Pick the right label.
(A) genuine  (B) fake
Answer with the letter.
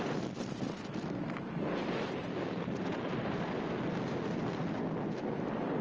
A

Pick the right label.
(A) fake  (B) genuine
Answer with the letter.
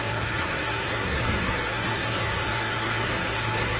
A